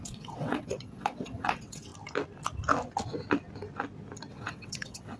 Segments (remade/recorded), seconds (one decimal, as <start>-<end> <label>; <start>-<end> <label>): 0.0-1.9 remade; 1.9-4.3 recorded; 4.3-5.2 remade